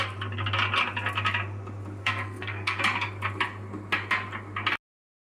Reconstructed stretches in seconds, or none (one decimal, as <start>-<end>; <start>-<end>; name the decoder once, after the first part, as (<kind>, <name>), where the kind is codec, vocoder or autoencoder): 2.0-2.8 (codec, SNAC)